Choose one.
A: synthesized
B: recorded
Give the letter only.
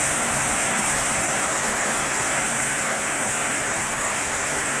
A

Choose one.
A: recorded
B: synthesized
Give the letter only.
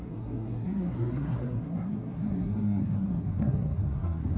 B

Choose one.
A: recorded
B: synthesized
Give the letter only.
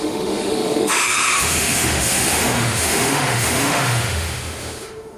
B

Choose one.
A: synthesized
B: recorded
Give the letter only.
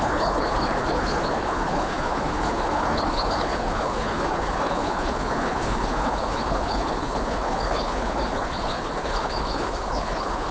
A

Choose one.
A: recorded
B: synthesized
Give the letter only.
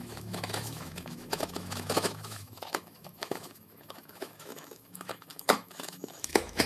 B